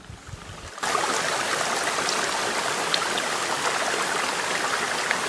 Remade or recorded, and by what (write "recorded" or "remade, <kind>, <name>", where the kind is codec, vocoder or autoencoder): recorded